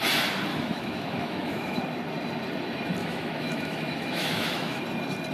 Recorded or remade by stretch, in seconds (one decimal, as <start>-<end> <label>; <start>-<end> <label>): 0.0-0.5 recorded; 0.5-1.8 remade; 1.8-3.0 recorded; 3.0-4.8 remade; 4.8-5.3 recorded